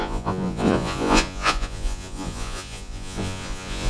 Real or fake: fake